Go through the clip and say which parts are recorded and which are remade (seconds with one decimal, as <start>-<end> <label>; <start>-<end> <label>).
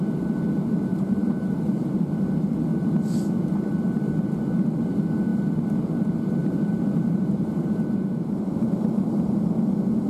0.0-0.9 recorded; 0.9-2.1 remade; 2.1-6.4 recorded; 6.4-9.3 remade; 9.3-10.1 recorded